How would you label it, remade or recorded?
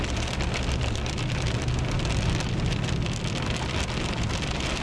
recorded